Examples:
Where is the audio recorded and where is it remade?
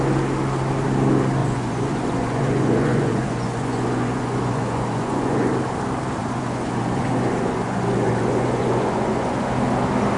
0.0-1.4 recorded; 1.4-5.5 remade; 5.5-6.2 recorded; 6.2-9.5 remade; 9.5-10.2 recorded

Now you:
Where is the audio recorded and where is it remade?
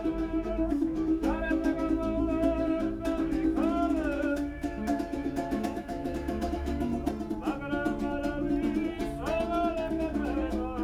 0.0-6.9 remade; 6.9-9.9 recorded; 9.9-10.8 remade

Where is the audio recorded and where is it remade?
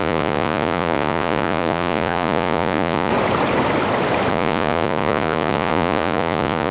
0.0-3.1 remade; 3.1-4.3 recorded; 4.3-6.7 remade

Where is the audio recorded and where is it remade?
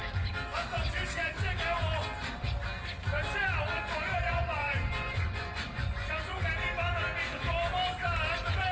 0.0-4.1 recorded; 4.1-6.5 remade; 6.5-8.7 recorded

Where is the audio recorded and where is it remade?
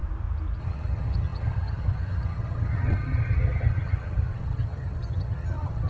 0.0-0.6 recorded; 0.6-5.9 remade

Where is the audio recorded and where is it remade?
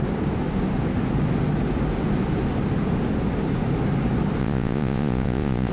0.0-4.4 recorded; 4.4-5.7 remade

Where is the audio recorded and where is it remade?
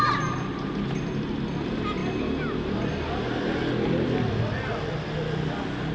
0.0-5.9 recorded